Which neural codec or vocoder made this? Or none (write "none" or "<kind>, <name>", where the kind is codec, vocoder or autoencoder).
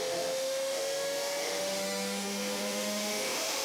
autoencoder, DAC-VAE